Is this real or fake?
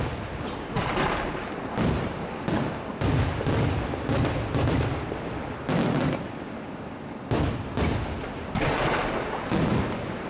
real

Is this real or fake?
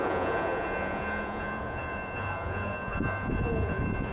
fake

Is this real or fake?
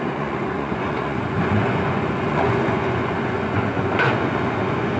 fake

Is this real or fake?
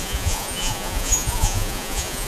fake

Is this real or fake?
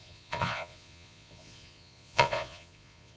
fake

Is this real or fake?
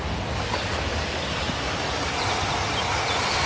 real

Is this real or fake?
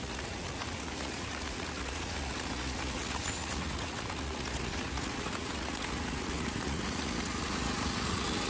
fake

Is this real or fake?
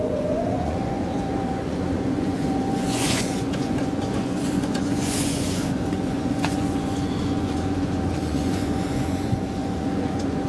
fake